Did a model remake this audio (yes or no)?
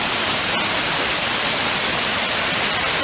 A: no